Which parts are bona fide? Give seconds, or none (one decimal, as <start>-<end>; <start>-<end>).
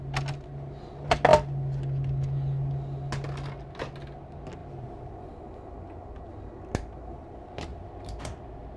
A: 0.0-4.6; 5.4-7.7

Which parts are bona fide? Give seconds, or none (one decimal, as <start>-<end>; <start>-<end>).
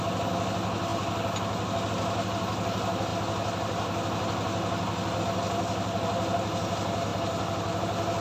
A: 0.0-8.2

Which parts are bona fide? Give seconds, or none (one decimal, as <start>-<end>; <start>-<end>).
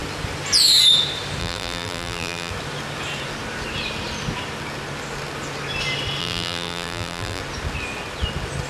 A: 0.0-1.4; 2.5-6.2; 7.4-8.7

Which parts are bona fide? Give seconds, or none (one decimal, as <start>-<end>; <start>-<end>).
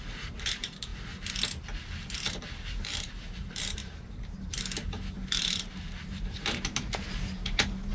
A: 0.9-2.2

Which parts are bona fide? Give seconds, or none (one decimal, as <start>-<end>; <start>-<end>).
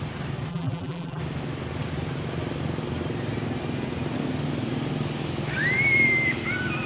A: 0.0-0.5; 1.2-6.9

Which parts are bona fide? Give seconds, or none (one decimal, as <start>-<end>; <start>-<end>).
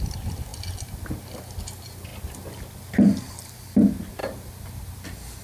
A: 0.0-5.4